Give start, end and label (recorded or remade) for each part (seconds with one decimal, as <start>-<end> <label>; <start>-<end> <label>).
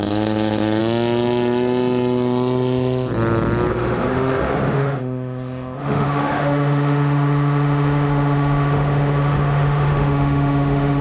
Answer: 0.0-0.8 remade; 0.8-3.7 recorded; 3.7-11.0 remade